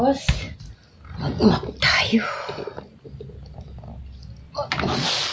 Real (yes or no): yes